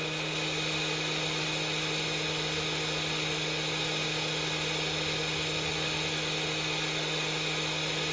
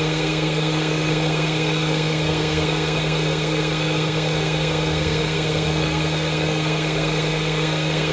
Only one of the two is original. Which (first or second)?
first